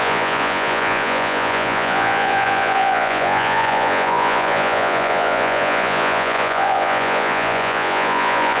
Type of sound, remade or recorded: remade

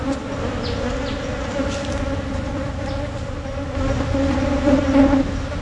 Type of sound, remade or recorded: recorded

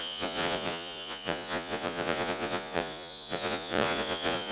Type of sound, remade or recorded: remade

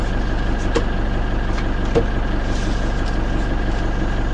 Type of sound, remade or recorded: recorded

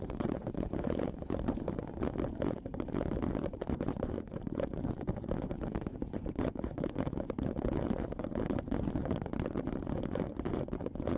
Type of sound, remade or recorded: remade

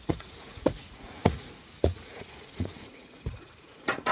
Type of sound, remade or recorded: remade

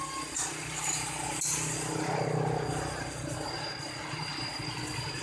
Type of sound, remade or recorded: recorded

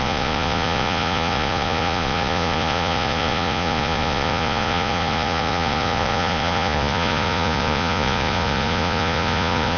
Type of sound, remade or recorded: remade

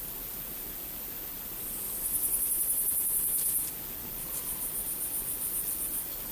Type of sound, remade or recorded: recorded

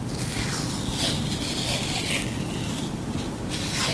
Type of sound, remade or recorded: recorded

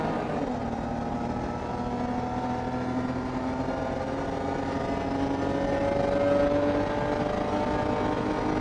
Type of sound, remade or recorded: recorded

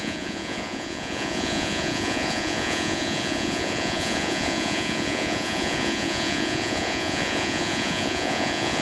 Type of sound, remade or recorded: remade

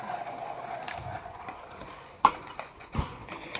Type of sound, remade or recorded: remade